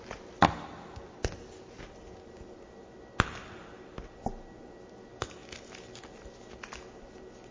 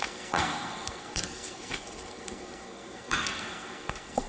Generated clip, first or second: second